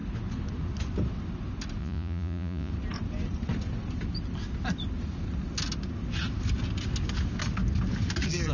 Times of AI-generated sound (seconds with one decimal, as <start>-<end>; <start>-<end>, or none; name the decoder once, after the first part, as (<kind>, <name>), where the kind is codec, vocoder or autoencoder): 1.8-2.7 (vocoder, Vocos)